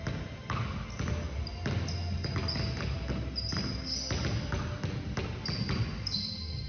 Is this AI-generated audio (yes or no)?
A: no